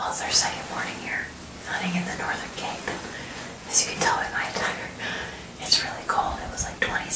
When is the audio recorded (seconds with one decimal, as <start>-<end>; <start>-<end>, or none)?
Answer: 0.0-2.1; 4.4-7.2